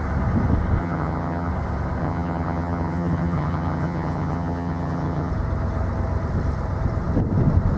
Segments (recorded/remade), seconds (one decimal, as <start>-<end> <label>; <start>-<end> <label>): 0.0-0.8 recorded; 0.8-1.5 remade; 1.5-2.0 recorded; 2.0-5.3 remade; 5.3-7.8 recorded